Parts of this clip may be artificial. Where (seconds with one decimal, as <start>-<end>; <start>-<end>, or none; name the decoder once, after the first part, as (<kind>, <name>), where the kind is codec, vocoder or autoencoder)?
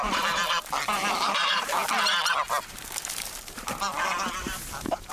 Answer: 0.0-1.8 (vocoder, BigVGAN v2); 2.7-3.9; 4.4-5.1